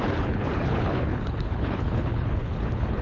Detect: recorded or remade remade